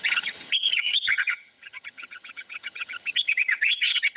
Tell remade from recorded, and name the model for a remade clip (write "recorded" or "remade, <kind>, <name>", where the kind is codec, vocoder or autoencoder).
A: remade, vocoder, HiFi-GAN